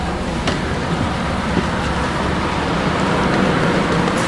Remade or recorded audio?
recorded